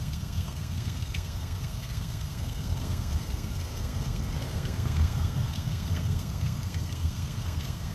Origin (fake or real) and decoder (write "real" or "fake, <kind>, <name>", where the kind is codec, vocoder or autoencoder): fake, codec, SNAC